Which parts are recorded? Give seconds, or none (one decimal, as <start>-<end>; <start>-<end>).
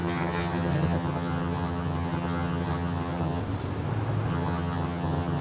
3.4-4.3